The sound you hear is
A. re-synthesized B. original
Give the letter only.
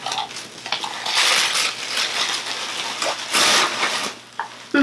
B